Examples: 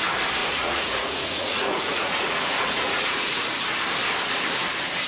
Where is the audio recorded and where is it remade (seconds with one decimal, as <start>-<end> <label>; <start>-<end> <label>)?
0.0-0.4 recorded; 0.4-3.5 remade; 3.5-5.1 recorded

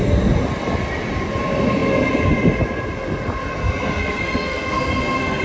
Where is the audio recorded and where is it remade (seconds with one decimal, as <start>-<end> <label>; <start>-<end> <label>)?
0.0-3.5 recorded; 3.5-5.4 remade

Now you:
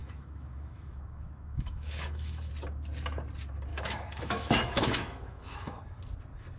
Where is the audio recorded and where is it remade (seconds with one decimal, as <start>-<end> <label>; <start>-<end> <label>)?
0.0-2.5 remade; 2.5-3.7 recorded; 3.7-5.8 remade; 5.8-6.6 recorded

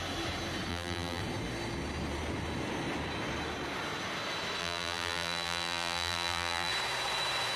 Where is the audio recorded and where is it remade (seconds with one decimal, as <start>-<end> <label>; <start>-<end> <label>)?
0.0-0.7 recorded; 0.7-1.2 remade; 1.2-4.6 recorded; 4.6-6.7 remade; 6.7-7.6 recorded

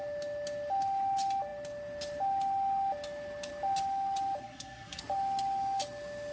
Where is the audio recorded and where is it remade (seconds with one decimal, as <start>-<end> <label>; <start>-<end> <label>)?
0.0-4.4 recorded; 4.4-5.0 remade; 5.0-6.3 recorded

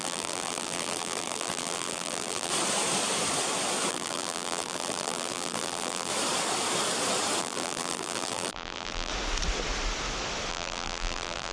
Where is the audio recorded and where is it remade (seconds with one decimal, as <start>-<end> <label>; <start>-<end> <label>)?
0.0-2.5 remade; 2.5-3.9 recorded; 3.9-6.1 remade; 6.1-7.4 recorded; 7.4-9.1 remade; 9.1-10.5 recorded; 10.5-11.5 remade